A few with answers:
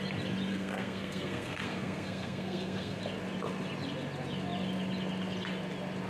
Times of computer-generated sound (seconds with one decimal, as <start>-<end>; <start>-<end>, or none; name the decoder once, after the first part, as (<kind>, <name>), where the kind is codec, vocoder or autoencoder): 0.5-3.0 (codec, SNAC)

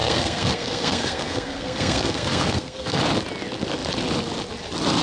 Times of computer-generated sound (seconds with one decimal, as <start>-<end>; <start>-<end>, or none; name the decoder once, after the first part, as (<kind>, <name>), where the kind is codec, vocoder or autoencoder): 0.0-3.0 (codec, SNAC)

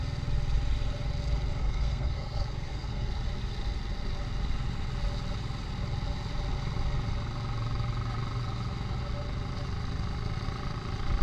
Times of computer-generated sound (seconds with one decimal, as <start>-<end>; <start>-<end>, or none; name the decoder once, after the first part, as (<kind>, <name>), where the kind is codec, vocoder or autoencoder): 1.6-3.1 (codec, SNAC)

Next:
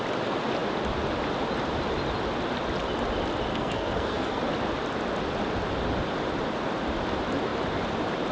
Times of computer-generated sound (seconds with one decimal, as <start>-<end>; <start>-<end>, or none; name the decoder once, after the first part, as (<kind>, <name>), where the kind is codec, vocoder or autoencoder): 3.5-4.4 (codec, SNAC)

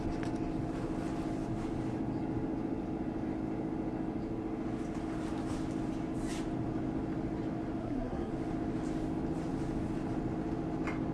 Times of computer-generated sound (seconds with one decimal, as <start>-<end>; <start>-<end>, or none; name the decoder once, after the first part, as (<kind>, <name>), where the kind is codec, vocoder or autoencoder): 7.8-8.3 (codec, SNAC)

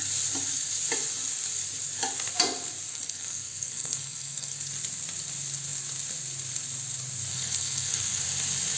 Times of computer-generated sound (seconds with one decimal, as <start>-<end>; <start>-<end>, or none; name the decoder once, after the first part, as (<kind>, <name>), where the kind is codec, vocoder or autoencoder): 2.9-4.7 (codec, SNAC); 7.3-8.2

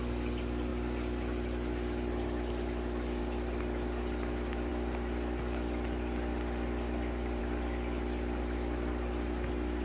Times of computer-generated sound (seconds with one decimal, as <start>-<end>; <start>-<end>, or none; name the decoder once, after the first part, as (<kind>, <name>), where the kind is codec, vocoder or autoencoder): none

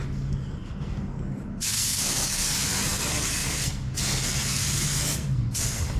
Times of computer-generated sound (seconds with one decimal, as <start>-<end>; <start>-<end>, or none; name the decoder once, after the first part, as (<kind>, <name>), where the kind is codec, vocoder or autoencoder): 0.0-6.0 (codec, SNAC)